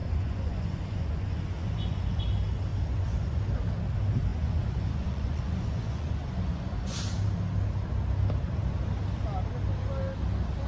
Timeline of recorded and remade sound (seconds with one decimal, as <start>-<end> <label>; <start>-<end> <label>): 0.0-2.2 remade; 2.2-2.7 recorded; 2.7-3.4 remade; 3.4-4.3 recorded; 4.3-7.0 remade; 7.0-10.7 recorded